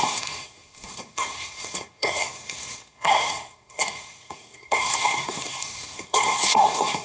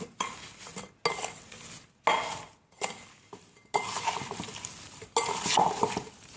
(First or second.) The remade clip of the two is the first